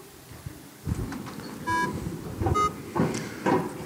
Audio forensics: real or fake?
real